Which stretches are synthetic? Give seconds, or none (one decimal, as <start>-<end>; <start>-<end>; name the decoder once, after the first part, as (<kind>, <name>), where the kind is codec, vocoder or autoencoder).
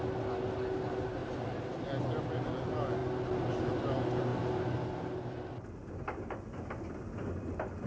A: none